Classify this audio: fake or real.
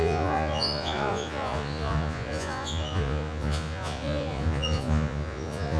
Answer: fake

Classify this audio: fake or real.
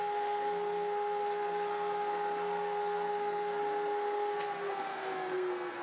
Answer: fake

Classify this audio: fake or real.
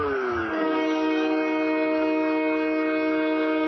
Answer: fake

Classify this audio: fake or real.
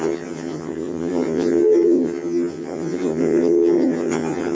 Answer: fake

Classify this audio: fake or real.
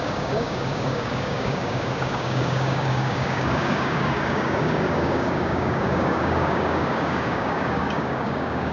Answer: fake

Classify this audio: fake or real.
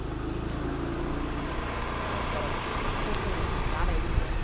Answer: real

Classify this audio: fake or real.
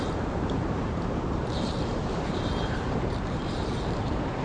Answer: fake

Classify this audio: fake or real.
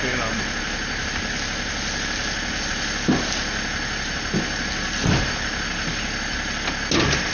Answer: real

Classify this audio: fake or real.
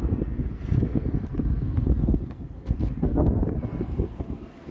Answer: fake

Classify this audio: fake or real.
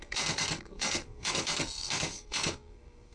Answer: fake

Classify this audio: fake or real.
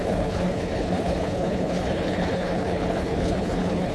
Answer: fake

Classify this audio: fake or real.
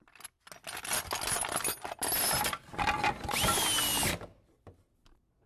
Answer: real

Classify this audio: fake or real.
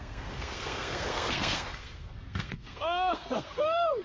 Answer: fake